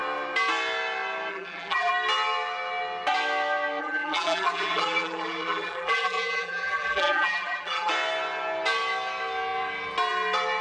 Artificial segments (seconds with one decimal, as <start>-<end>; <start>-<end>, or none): 1.3-1.9; 3.8-7.9